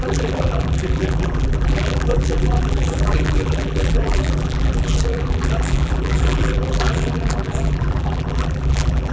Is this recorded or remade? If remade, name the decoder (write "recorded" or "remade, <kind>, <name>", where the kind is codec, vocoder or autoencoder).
remade, vocoder, BigVGAN v2